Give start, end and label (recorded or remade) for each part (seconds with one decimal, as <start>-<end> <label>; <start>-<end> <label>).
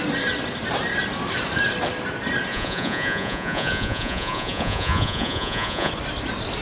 0.0-2.5 recorded; 2.5-5.9 remade; 5.9-6.6 recorded